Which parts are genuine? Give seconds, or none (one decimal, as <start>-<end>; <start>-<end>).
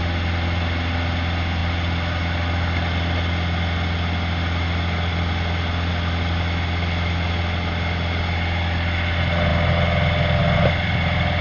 0.0-11.4